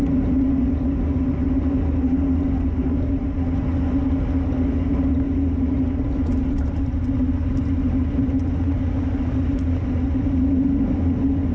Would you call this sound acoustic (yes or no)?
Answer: yes